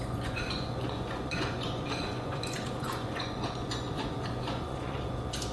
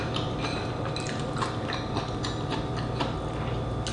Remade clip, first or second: first